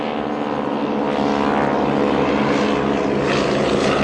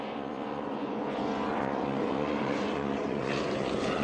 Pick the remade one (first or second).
second